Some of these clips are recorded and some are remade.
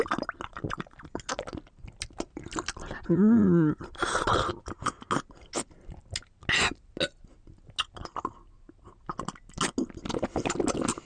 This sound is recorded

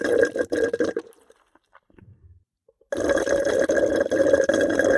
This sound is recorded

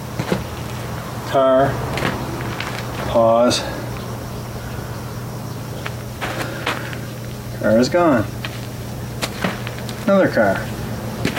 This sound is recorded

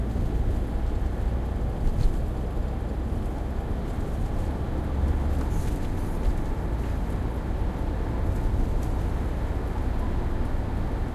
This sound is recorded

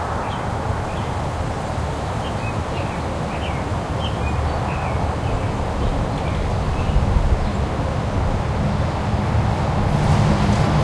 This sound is recorded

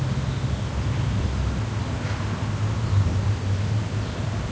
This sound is recorded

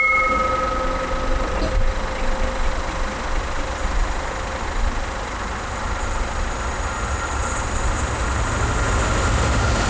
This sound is recorded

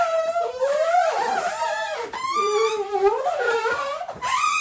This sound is remade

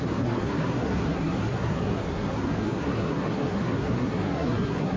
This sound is remade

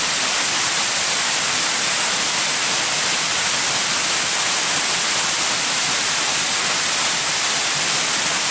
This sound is recorded